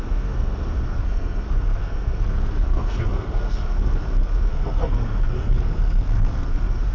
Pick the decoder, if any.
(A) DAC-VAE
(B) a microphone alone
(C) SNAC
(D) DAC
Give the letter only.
C